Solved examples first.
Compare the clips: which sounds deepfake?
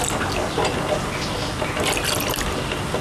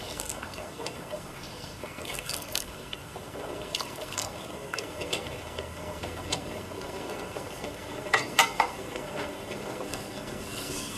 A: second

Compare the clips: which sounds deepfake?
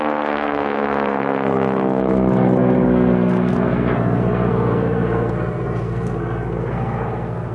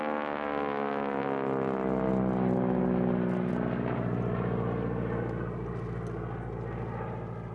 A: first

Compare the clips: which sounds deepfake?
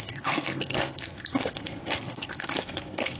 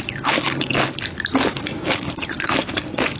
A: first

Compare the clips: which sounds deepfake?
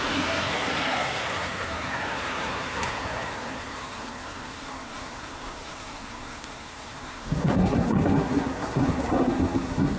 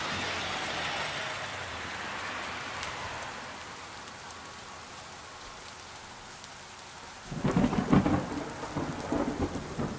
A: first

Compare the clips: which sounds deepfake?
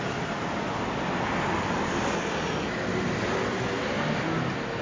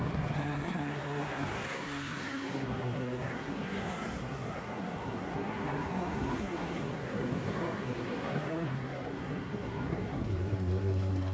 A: second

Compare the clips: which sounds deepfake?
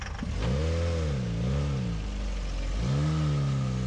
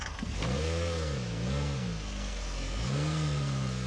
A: second